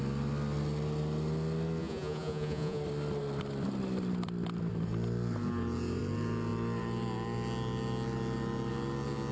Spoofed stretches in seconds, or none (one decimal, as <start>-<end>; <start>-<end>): 1.8-2.8